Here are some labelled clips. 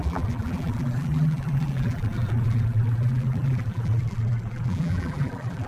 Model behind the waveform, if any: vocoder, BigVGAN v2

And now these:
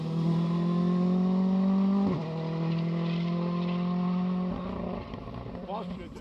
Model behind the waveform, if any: none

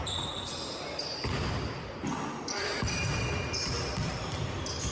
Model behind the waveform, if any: none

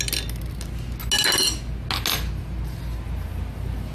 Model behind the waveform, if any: none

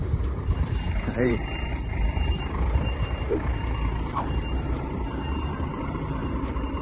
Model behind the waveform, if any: vocoder, BigVGAN v2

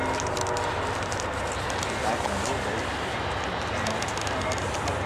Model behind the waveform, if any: none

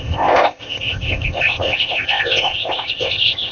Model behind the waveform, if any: codec, ZipCodec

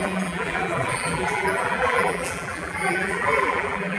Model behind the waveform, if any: vocoder, BigVGAN v2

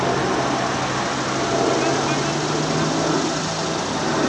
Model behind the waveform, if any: none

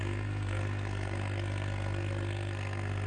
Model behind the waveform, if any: codec, SNAC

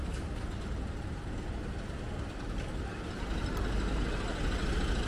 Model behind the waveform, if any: none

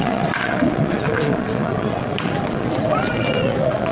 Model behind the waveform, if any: vocoder, Vocos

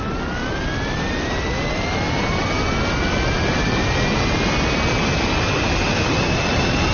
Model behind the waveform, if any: none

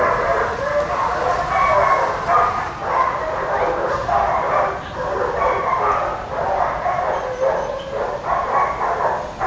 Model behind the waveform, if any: none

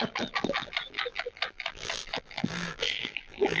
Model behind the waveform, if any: vocoder, BigVGAN v2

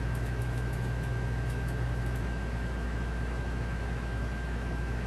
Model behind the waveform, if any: autoencoder, DAC-VAE